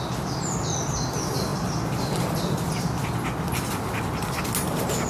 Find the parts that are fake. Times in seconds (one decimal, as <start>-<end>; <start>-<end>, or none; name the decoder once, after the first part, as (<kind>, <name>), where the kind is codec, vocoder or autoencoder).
none